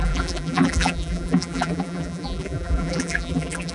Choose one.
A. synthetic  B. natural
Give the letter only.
A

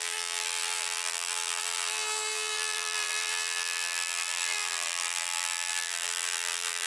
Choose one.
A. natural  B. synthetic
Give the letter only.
B